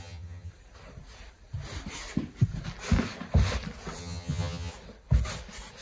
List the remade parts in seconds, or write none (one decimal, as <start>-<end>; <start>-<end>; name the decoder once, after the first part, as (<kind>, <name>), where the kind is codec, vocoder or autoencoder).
0.0-0.5 (vocoder, HiFi-GAN); 4.0-4.7